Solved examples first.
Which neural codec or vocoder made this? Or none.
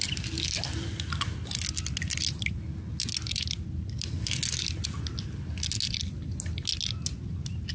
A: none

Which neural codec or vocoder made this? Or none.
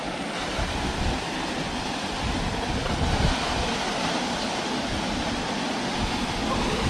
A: none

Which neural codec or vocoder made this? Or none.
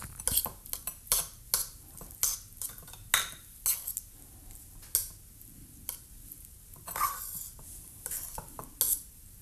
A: none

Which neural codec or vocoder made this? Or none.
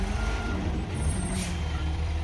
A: vocoder, BigVGAN v2